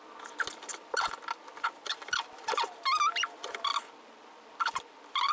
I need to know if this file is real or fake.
real